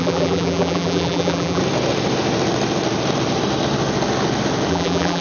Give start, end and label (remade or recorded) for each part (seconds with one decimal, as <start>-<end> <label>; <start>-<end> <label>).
0.0-1.6 remade; 1.6-4.7 recorded; 4.7-5.2 remade